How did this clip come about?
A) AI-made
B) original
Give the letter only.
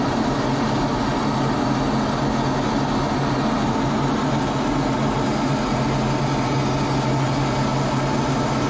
B